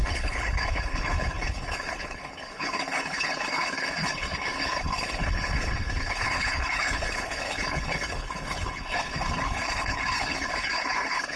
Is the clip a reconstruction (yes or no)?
yes